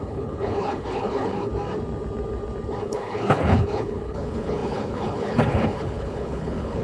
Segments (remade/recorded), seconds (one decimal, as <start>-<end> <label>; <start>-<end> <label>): 0.0-1.5 remade; 1.5-2.8 recorded; 2.8-6.8 remade